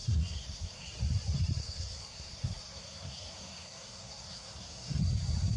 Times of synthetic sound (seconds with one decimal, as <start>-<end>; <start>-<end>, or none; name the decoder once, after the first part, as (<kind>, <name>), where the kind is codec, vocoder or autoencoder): 0.0-0.9 (codec, SNAC); 1.6-5.0